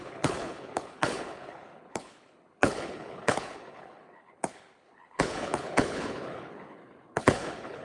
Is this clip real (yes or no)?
no